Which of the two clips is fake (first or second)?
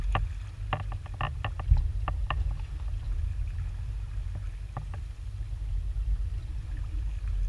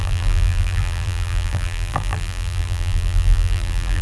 second